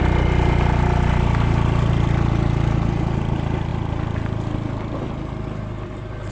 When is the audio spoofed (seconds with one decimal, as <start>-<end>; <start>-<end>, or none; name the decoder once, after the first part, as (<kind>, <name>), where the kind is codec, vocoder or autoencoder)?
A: none